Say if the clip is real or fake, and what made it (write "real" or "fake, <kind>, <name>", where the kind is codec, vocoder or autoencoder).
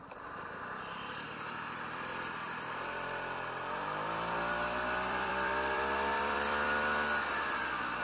fake, vocoder, BigVGAN v2